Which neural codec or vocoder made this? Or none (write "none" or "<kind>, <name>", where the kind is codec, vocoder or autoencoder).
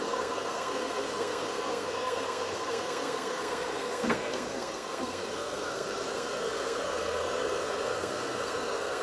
codec, SNAC